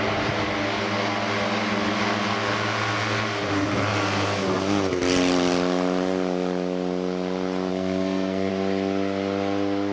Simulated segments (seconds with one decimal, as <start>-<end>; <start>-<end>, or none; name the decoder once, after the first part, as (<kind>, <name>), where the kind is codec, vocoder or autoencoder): 7.7-8.5 (codec, SNAC)